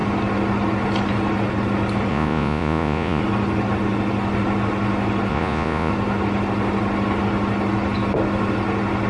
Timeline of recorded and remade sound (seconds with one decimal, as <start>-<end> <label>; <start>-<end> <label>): 0.0-2.1 recorded; 2.1-3.2 remade; 3.2-5.3 recorded; 5.3-5.9 remade; 5.9-9.1 recorded